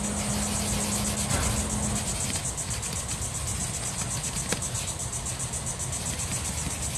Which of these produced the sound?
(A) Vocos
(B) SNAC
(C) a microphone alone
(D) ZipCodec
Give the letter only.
C